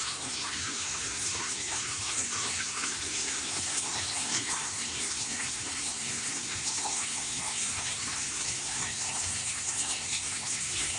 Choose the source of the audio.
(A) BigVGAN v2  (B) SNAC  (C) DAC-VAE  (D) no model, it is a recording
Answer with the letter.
B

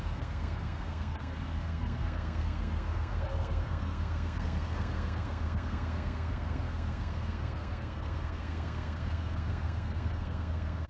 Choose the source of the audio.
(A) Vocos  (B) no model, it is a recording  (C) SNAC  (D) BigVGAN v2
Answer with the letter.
C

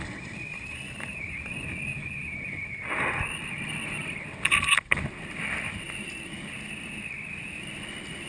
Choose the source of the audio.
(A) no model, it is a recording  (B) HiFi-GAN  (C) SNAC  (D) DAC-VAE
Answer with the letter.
A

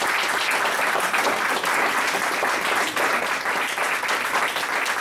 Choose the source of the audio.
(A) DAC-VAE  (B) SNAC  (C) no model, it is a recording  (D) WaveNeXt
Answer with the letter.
C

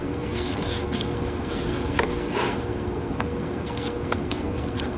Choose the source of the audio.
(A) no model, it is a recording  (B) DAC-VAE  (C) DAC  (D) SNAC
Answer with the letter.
D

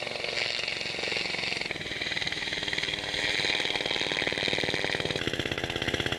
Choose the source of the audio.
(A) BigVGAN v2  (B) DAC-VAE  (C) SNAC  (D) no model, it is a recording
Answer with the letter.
D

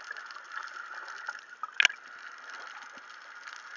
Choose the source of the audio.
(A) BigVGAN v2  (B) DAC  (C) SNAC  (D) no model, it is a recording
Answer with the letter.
D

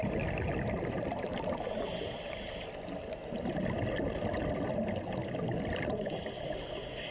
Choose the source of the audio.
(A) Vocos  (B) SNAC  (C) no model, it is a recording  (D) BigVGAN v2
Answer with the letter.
C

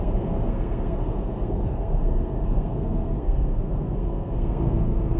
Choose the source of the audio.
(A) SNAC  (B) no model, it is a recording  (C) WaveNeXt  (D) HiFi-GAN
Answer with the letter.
A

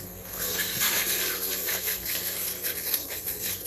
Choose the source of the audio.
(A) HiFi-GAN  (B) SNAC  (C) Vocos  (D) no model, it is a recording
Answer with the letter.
B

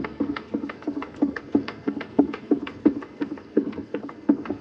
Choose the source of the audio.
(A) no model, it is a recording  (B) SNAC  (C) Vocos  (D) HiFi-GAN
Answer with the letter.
B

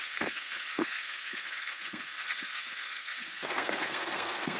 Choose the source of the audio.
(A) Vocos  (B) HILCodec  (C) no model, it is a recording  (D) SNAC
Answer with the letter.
D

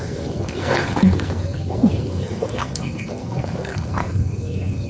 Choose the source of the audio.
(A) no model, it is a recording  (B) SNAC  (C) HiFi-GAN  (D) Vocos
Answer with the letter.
B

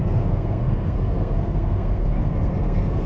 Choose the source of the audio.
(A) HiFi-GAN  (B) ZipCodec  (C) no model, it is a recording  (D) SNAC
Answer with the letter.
D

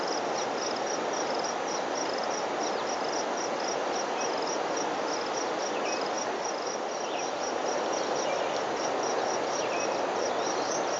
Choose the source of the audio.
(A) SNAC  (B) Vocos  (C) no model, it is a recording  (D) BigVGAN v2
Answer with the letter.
C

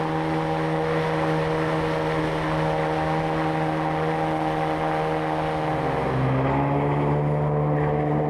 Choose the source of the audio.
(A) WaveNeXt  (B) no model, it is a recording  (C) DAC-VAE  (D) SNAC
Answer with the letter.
B